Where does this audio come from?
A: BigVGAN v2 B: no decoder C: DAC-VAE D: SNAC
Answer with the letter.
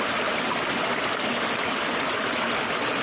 A